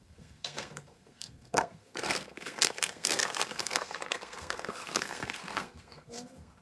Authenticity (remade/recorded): remade